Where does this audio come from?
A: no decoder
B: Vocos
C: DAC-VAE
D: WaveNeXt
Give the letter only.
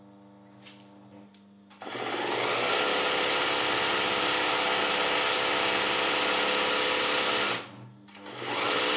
A